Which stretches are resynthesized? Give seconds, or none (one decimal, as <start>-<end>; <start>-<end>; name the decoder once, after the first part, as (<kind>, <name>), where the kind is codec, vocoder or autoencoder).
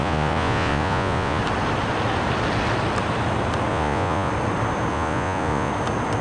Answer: 0.0-1.4 (vocoder, Vocos); 3.7-4.3; 4.9-5.7